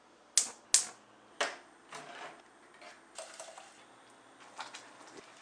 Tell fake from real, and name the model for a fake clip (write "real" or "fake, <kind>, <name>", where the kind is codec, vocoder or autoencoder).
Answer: real